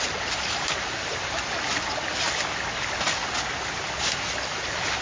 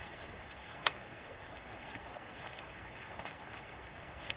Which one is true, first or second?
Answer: first